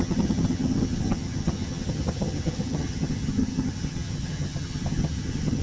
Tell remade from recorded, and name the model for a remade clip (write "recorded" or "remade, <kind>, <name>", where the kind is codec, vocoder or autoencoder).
remade, vocoder, HiFi-GAN